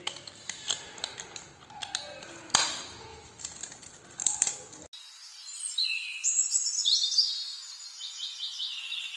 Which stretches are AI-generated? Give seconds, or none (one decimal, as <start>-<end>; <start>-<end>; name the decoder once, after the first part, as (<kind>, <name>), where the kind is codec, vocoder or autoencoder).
3.1-4.0 (vocoder, BigVGAN v2)